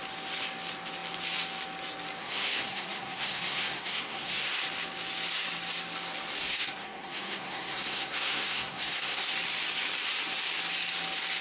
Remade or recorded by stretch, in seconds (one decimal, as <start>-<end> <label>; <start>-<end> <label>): 0.0-2.2 recorded; 2.2-4.6 remade; 4.6-6.5 recorded; 6.5-9.3 remade; 9.3-11.4 recorded